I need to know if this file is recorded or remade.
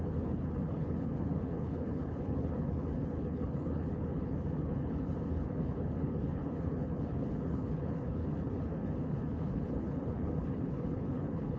remade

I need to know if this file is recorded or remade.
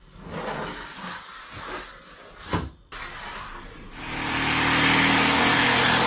recorded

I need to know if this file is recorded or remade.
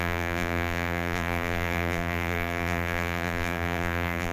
remade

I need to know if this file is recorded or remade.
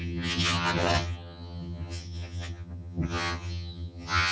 remade